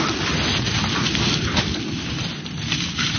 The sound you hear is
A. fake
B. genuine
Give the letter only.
B